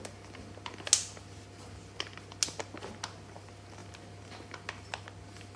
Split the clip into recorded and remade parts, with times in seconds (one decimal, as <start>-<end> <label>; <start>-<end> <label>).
0.0-5.6 recorded